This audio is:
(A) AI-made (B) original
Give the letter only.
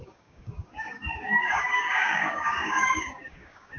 A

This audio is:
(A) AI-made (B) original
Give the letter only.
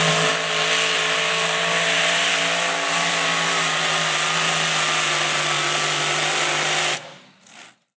B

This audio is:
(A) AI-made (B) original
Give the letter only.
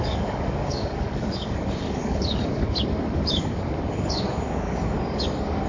A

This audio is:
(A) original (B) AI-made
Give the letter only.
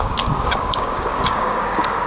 B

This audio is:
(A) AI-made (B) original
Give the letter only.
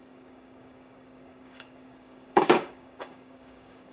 A